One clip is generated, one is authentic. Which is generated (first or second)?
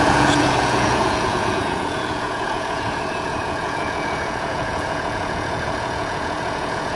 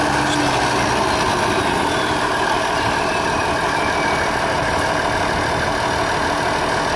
first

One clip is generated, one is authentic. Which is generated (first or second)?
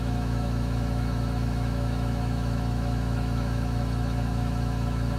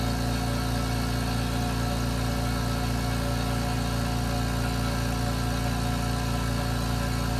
first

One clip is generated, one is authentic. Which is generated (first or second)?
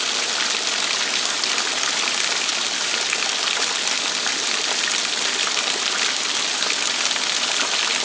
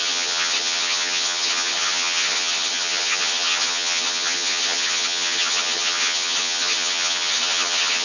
second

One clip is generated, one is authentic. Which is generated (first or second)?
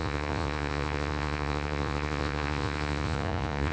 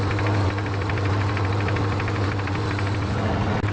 first